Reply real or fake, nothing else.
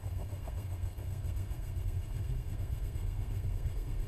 fake